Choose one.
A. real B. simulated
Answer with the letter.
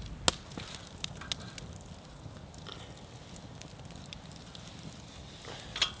A